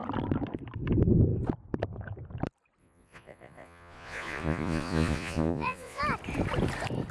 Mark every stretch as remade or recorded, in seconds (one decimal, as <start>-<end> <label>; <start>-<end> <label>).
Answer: 0.0-2.8 recorded; 2.8-6.0 remade; 6.0-7.1 recorded